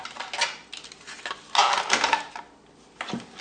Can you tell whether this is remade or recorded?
recorded